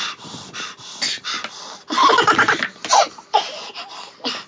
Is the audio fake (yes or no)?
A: no